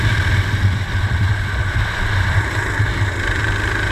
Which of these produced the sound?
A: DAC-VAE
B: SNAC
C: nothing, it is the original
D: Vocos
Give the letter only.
C